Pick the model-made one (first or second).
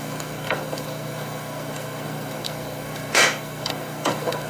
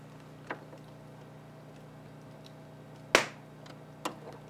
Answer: first